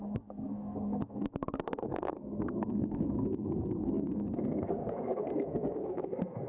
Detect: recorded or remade remade